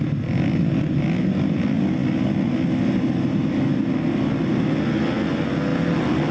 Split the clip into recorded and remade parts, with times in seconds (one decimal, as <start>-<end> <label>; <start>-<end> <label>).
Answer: 0.0-6.3 recorded